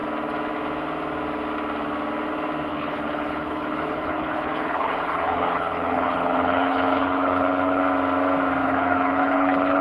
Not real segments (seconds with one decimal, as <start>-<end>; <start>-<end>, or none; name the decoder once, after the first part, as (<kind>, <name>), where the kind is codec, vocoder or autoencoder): 2.7-7.8 (codec, HILCodec); 8.6-9.8